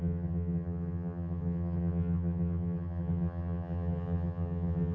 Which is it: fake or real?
fake